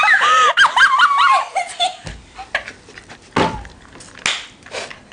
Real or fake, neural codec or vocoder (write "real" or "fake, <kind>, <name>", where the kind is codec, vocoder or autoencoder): real